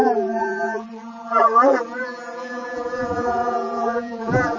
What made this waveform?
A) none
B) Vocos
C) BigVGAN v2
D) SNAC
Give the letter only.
C